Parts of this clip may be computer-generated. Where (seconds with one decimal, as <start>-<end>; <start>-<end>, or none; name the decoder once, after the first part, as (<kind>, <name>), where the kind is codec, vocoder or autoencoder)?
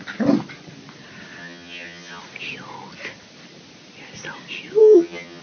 1.4-2.2 (vocoder, HiFi-GAN); 4.8-5.4